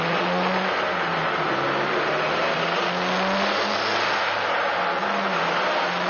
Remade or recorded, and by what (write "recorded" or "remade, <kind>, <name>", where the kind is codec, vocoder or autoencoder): recorded